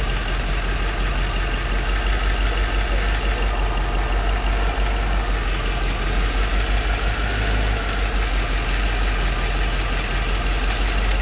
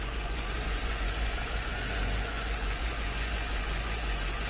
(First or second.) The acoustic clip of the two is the first